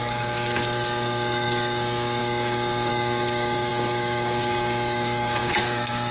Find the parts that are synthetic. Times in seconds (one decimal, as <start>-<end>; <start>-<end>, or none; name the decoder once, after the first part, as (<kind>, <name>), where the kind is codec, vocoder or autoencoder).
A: 0.0-6.1 (codec, DAC)